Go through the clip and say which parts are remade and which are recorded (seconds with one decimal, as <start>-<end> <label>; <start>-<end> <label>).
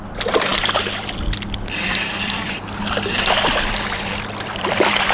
0.0-0.5 remade; 0.5-2.1 recorded; 2.1-5.1 remade